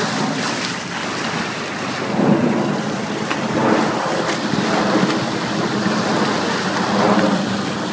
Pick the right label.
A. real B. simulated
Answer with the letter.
A